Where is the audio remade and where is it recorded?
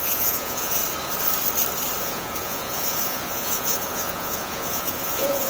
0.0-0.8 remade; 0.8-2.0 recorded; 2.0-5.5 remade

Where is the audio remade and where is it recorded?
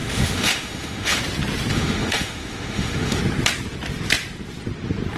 0.0-1.2 remade; 1.2-1.7 recorded; 1.7-3.2 remade; 3.2-5.2 recorded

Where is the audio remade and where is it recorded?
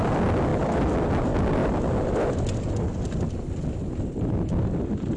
0.0-0.5 recorded; 0.5-1.1 remade; 1.1-5.2 recorded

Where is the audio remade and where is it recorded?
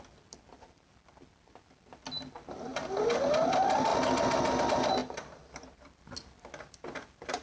0.0-7.4 recorded